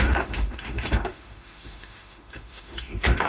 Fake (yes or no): yes